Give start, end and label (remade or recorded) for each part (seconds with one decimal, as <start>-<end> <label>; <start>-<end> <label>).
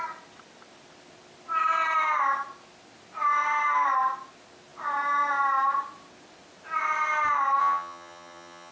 0.0-7.6 recorded; 7.6-8.7 remade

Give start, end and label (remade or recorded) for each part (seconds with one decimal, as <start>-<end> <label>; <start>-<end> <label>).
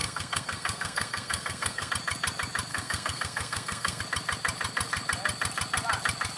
0.0-1.9 remade; 1.9-2.7 recorded; 2.7-4.0 remade; 4.0-6.4 recorded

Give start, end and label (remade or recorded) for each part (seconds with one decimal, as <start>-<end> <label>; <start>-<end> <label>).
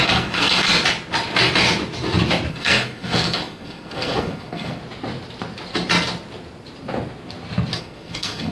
0.0-0.7 remade; 0.7-2.5 recorded; 2.5-4.8 remade; 4.8-7.8 recorded; 7.8-8.5 remade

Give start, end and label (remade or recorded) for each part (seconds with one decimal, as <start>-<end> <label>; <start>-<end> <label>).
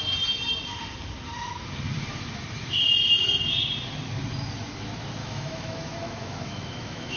0.0-5.2 recorded; 5.2-7.2 remade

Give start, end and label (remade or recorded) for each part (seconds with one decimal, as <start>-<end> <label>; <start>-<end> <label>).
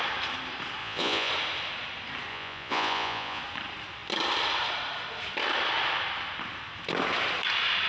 0.0-0.8 recorded; 0.8-1.3 remade; 1.3-2.3 recorded; 2.3-3.4 remade; 3.4-7.9 recorded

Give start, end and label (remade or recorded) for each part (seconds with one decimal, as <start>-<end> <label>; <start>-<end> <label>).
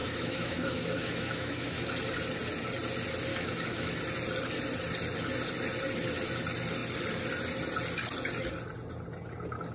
0.0-1.9 remade; 1.9-3.3 recorded; 3.3-3.9 remade; 3.9-9.7 recorded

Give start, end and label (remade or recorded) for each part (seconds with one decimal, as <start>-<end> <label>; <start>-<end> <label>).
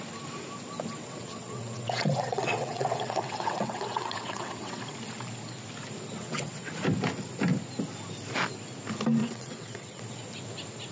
0.0-1.0 recorded; 1.0-4.8 remade; 4.8-6.2 recorded; 6.2-6.7 remade; 6.7-9.2 recorded; 9.2-10.0 remade; 10.0-10.9 recorded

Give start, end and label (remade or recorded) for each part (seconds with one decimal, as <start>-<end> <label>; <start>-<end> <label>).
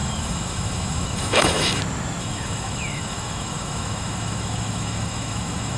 0.0-1.8 remade; 1.8-2.2 recorded; 2.2-5.8 remade